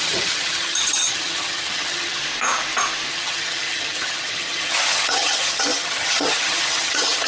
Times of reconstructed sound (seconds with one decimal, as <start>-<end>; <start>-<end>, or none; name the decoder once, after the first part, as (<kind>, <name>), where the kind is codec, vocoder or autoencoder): 0.0-2.2 (vocoder, HiFi-GAN); 3.1-7.3